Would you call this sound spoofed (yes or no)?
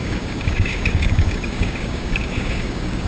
yes